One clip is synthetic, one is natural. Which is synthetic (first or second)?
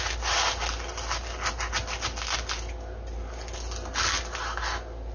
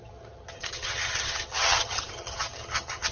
second